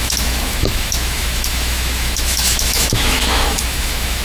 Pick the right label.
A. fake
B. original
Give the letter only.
A